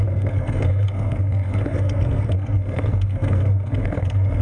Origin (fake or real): fake